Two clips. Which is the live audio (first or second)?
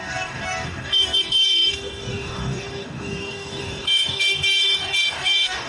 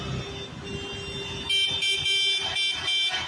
second